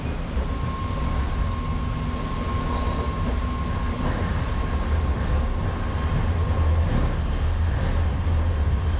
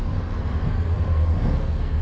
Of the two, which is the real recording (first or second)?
first